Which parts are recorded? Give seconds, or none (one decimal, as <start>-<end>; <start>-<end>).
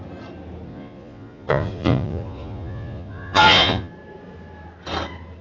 0.0-0.7; 3.9-5.4